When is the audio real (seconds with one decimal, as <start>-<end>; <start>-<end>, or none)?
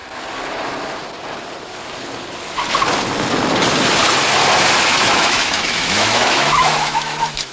0.0-4.9